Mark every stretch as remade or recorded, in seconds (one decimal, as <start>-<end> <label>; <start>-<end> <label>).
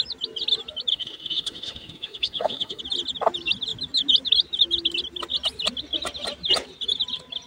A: 0.0-0.9 recorded; 0.9-2.8 remade; 2.8-7.5 recorded